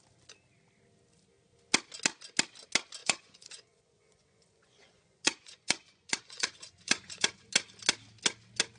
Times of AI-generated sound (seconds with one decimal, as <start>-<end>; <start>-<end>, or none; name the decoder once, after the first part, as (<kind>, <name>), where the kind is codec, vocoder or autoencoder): 3.0-7.5 (vocoder, Vocos)